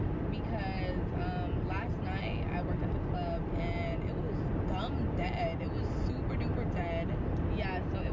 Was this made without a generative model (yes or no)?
yes